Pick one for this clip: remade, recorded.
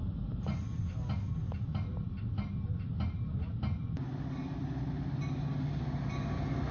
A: recorded